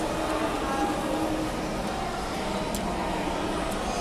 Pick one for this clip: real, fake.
real